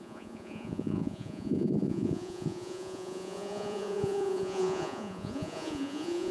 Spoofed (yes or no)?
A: yes